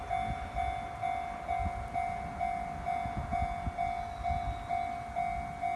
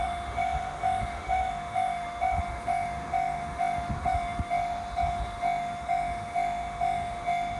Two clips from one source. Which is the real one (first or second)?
first